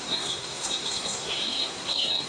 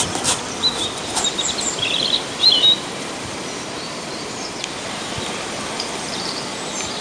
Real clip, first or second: second